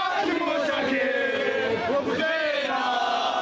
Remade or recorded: recorded